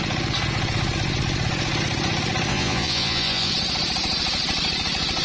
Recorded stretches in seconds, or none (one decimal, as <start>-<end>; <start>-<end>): 0.0-2.5; 3.5-5.2